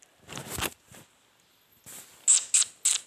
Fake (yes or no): no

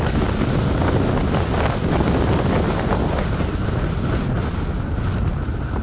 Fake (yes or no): no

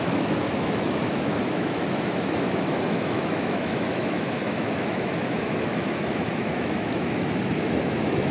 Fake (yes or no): yes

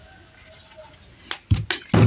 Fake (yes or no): no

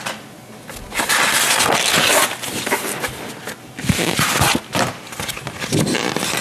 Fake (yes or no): no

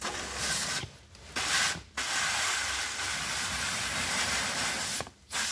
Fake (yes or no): no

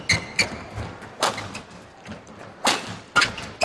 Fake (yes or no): no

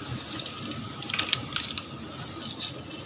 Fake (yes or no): no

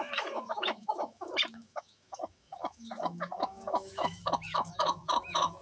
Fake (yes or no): yes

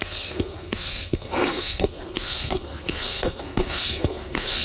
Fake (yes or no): yes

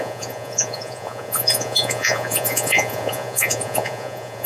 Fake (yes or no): yes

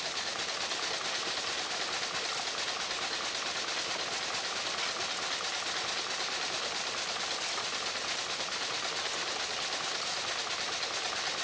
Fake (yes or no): no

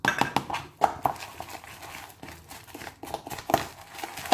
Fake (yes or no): no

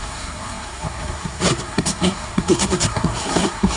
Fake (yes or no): yes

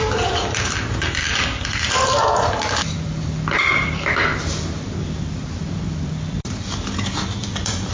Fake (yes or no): yes